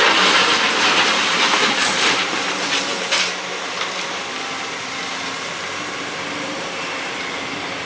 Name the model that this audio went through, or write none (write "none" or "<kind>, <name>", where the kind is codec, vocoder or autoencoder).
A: vocoder, BigVGAN v2